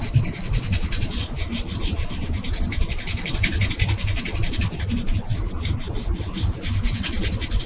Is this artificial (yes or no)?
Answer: no